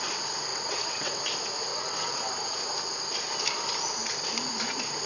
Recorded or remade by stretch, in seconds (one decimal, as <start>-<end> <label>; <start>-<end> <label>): 0.0-0.5 recorded; 0.5-1.2 remade; 1.2-1.7 recorded; 1.7-2.3 remade; 2.3-5.1 recorded